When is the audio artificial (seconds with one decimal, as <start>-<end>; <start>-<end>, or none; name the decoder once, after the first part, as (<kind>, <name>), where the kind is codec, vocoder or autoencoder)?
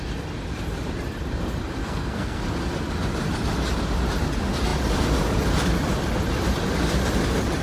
1.8-2.4 (codec, SNAC)